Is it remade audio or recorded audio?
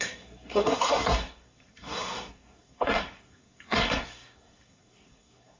remade